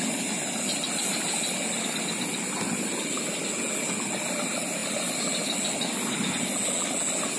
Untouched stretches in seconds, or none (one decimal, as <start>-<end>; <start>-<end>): 0.0-7.4